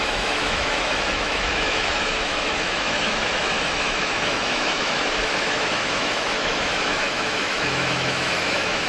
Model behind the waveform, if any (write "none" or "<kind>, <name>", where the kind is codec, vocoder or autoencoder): autoencoder, DAC-VAE